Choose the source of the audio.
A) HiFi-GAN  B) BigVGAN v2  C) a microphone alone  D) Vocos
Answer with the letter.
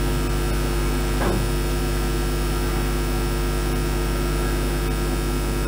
C